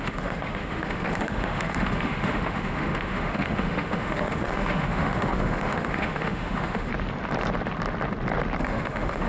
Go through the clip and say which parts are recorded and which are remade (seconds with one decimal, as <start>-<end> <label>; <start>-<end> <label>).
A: 0.0-6.9 remade; 6.9-8.6 recorded; 8.6-9.3 remade